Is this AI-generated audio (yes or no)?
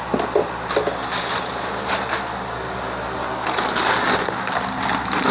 no